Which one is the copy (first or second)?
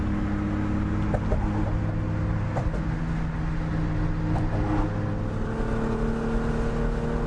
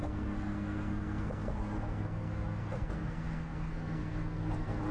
second